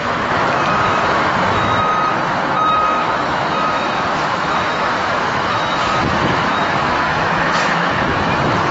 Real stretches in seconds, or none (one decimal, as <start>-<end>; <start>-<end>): 1.9-2.7